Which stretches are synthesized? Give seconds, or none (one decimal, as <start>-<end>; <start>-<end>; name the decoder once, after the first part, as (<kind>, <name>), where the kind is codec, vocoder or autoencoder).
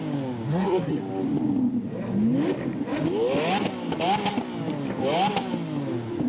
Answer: 0.5-1.0 (codec, SNAC)